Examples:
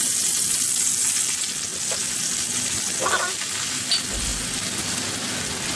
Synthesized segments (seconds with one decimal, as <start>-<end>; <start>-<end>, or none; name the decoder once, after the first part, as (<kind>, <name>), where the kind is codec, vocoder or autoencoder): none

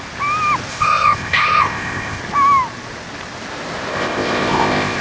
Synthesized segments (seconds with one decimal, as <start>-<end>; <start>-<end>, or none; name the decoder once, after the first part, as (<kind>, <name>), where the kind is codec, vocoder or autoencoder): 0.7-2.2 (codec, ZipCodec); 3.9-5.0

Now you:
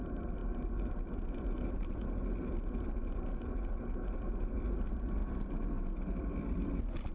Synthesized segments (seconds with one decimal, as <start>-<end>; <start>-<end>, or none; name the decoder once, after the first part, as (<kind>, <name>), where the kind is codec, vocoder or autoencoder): 0.0-0.4 (vocoder, BigVGAN v2); 4.3-5.2; 6.4-7.1

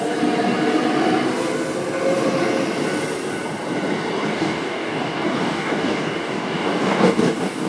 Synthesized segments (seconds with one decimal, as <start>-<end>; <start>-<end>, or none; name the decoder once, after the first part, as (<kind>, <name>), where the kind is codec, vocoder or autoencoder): 4.3-7.7 (codec, DAC)

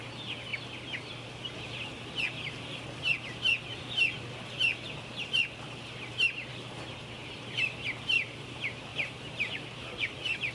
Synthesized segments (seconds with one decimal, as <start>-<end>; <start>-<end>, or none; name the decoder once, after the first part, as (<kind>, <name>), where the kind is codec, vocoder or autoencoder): 6.5-8.5 (vocoder, BigVGAN v2); 8.9-10.5